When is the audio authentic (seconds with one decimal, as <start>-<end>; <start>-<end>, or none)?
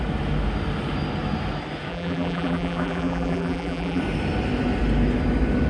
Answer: 0.0-1.9; 4.0-5.7